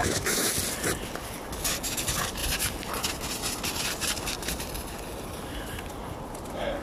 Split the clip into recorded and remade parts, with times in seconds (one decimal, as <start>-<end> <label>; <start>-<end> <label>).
0.0-0.5 remade; 0.5-6.8 recorded